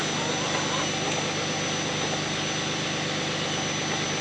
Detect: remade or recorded recorded